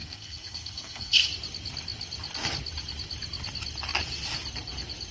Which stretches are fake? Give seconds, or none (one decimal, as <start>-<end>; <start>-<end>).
0.0-1.3